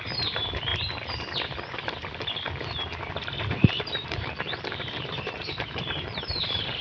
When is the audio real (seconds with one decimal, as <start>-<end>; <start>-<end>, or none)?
0.7-3.1